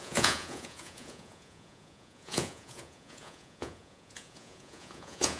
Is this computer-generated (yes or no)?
yes